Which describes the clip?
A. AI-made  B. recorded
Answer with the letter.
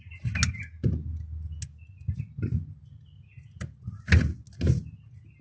B